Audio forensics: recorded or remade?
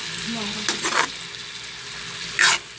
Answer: recorded